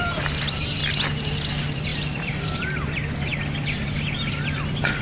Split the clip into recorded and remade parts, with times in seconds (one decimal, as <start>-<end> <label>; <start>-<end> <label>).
0.0-0.8 remade; 0.8-1.5 recorded; 1.5-5.0 remade